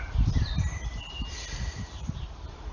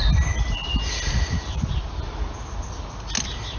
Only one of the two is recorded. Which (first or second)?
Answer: second